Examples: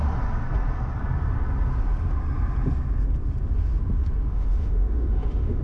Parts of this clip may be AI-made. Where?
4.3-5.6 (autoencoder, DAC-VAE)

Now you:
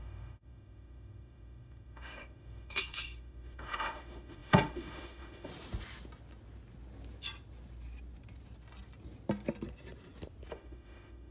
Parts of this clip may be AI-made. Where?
0.0-5.5 (autoencoder, DAC-VAE); 10.5-11.3

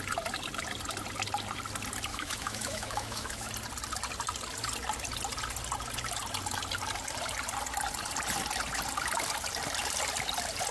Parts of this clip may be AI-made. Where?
2.1-3.5 (autoencoder, DAC-VAE)

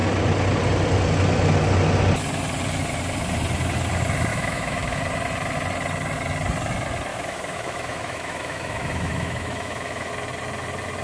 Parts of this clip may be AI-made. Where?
4.3-5.0 (autoencoder, DAC-VAE); 7.1-10.1

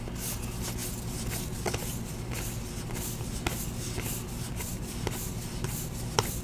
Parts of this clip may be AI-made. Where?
none

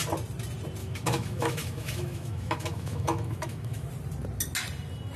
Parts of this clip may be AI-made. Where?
0.8-3.9 (autoencoder, DAC-VAE)

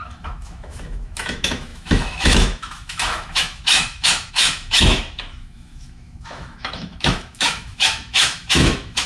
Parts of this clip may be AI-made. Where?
0.0-9.1 (autoencoder, DAC-VAE)

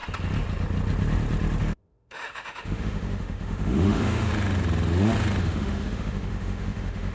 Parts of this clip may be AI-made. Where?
1.6-4.3 (autoencoder, DAC-VAE); 5.4-7.1